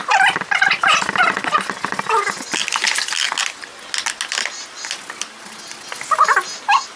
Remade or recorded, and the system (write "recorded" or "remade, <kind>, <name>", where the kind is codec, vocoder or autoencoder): recorded